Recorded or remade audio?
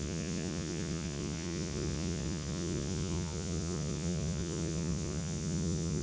remade